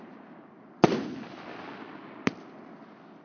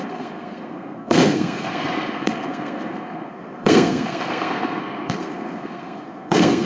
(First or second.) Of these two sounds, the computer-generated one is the second